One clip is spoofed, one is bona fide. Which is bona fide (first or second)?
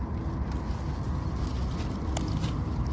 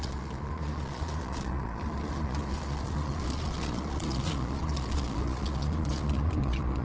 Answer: first